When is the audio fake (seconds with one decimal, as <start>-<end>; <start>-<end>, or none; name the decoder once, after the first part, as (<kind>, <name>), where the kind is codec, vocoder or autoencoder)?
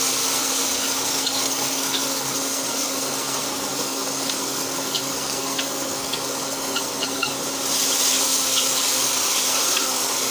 0.0-7.3 (codec, SNAC); 8.1-10.3